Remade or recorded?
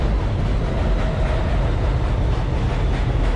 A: recorded